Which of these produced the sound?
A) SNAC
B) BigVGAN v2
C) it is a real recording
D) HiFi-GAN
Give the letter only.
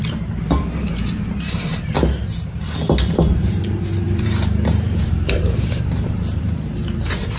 B